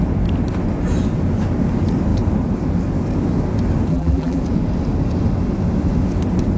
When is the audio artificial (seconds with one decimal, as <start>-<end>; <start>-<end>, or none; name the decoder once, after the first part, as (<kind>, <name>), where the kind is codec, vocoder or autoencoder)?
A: 3.9-4.4 (vocoder, BigVGAN v2)